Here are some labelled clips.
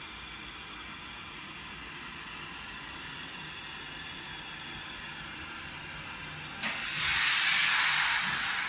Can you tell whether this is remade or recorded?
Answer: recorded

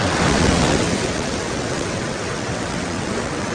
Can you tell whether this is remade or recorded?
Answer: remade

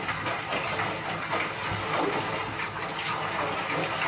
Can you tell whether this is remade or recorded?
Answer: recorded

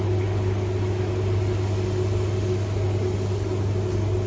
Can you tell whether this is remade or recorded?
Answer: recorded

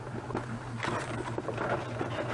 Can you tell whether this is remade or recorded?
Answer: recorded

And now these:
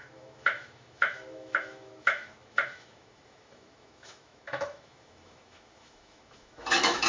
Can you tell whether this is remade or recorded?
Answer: remade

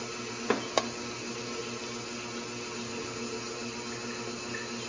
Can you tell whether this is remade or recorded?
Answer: recorded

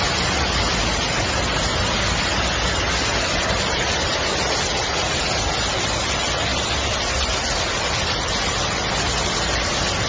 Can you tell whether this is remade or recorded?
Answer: recorded